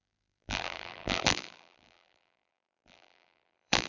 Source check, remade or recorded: remade